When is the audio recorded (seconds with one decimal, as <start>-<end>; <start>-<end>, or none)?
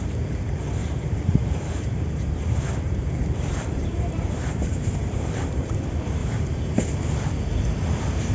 0.0-0.8; 5.8-6.2; 7.1-8.3